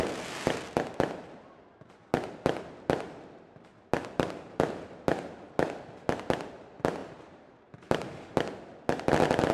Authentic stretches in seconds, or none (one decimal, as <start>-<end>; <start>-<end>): 0.0-4.0; 4.7-7.0; 8.1-9.5